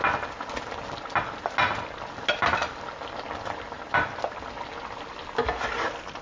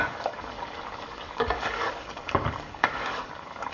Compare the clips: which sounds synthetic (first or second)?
second